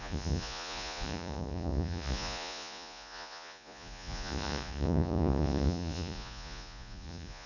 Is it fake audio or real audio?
fake